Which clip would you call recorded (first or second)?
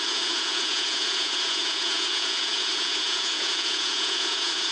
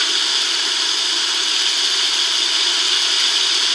second